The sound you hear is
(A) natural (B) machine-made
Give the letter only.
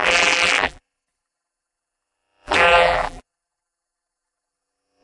B